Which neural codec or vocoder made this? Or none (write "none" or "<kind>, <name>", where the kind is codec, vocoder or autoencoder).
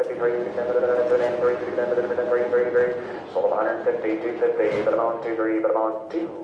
none